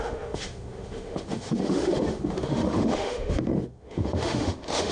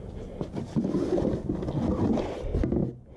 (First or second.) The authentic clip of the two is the second